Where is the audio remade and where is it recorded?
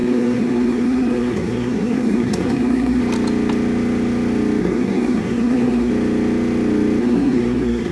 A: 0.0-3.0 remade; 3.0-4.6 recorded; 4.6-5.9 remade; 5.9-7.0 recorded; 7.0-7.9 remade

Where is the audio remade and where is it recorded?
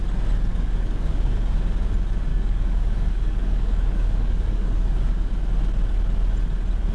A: 0.0-0.5 recorded; 0.5-1.1 remade; 1.1-2.3 recorded; 2.3-5.3 remade; 5.3-6.9 recorded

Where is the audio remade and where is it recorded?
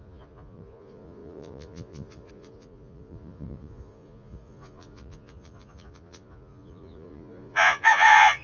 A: 0.0-8.4 remade